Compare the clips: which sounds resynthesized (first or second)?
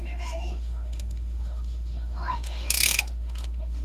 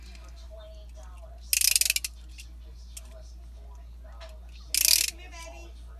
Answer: first